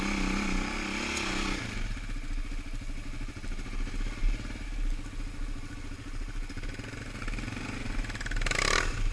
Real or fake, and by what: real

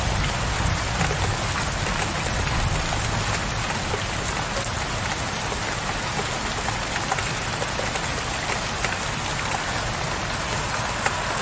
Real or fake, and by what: real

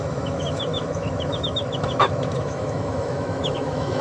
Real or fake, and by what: fake, autoencoder, DAC-VAE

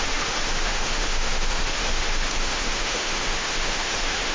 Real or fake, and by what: fake, autoencoder, DAC-VAE